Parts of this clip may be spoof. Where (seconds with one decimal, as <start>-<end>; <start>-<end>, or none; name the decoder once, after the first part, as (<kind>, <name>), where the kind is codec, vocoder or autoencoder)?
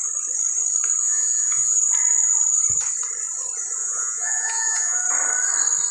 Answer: 1.0-1.8 (vocoder, Vocos); 3.8-5.0